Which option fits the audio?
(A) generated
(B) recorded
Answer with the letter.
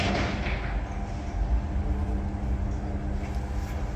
B